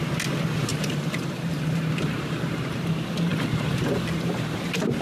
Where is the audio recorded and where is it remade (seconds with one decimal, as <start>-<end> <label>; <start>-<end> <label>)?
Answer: 0.0-0.7 recorded; 0.7-2.8 remade; 2.8-3.3 recorded; 3.3-4.4 remade; 4.4-5.0 recorded